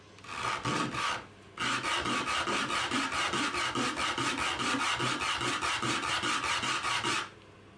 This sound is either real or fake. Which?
real